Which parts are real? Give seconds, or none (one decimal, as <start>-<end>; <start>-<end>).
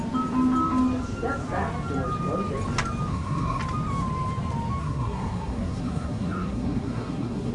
0.0-3.1; 3.6-4.8